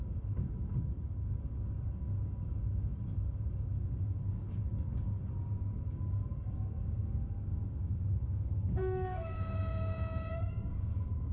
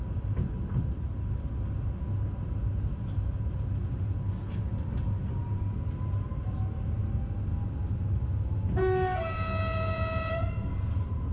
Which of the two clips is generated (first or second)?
first